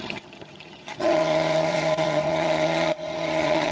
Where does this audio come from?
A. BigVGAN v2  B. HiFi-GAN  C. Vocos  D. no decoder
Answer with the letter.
B